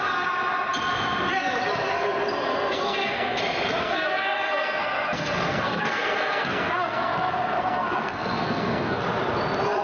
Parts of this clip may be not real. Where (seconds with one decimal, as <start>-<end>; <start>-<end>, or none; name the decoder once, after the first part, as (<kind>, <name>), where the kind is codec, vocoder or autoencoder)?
2.5-3.4 (codec, SNAC); 3.8-9.0